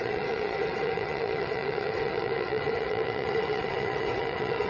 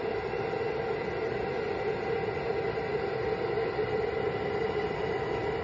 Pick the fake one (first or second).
first